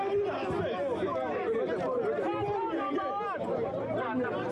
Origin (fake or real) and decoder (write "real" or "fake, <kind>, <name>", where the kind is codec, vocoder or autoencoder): real